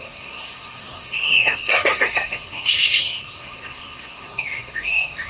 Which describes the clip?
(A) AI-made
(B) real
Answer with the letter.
A